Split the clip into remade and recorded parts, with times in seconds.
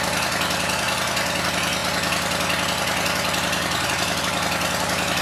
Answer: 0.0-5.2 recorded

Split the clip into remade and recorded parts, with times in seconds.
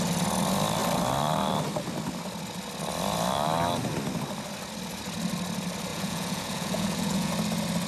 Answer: 0.0-5.9 recorded; 5.9-7.3 remade; 7.3-7.9 recorded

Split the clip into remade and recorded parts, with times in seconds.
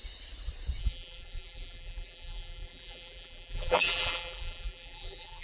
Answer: 0.0-0.8 recorded; 0.8-5.4 remade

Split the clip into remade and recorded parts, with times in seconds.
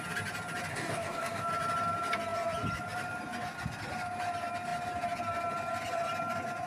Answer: 0.0-0.7 recorded; 0.7-1.4 remade; 1.4-6.7 recorded